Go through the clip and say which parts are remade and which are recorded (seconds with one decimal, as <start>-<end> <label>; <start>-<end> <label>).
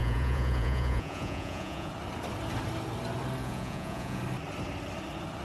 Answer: 0.0-1.9 remade; 1.9-3.4 recorded; 3.4-4.2 remade; 4.2-5.4 recorded